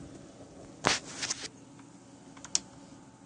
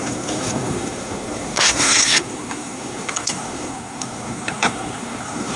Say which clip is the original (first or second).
first